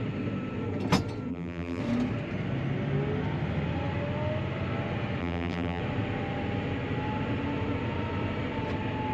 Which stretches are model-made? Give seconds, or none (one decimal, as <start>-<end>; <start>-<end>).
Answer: 1.3-1.8; 5.2-5.8